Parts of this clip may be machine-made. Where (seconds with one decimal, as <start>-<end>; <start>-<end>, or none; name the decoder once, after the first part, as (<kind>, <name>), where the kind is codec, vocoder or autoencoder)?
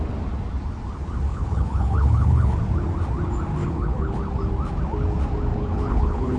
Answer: 1.3-2.6 (codec, HILCodec); 3.6-4.2; 5.5-6.4